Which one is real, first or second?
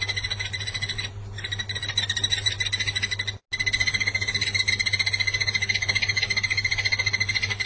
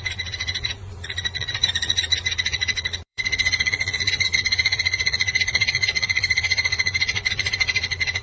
first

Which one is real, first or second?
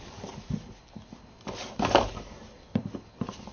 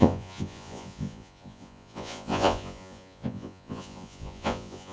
first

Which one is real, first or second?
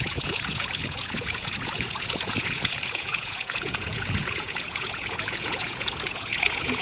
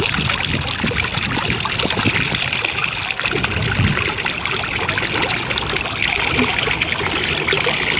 second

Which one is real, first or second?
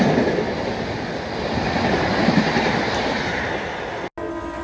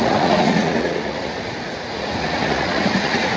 first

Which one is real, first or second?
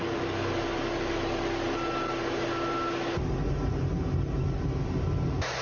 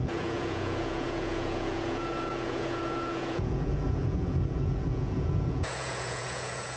first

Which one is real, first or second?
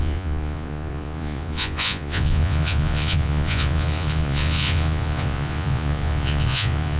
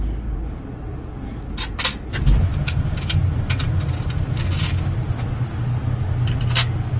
second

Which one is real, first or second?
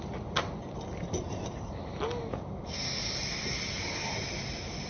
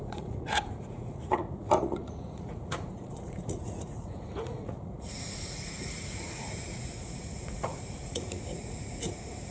first